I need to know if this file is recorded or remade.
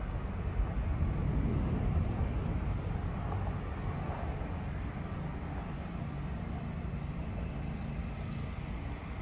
recorded